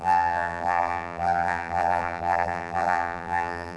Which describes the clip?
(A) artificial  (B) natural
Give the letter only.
A